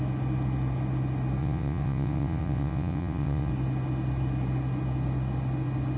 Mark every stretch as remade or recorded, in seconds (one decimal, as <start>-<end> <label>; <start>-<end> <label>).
0.0-1.4 recorded; 1.4-3.5 remade; 3.5-6.0 recorded